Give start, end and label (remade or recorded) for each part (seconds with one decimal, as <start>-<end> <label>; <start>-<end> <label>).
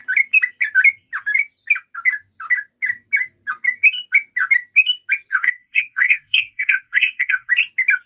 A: 0.0-5.3 recorded; 5.3-7.5 remade; 7.5-8.1 recorded